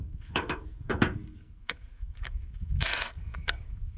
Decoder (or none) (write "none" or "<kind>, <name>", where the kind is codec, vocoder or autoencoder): codec, SNAC